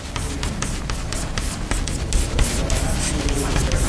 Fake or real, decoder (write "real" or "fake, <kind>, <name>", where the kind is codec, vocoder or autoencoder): real